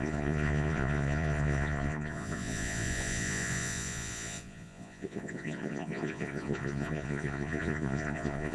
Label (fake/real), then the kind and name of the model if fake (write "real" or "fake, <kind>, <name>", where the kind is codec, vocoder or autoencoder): fake, vocoder, Vocos